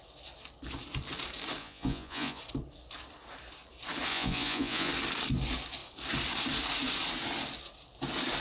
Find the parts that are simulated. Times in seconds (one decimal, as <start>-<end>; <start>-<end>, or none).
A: 1.6-2.4; 4.1-4.9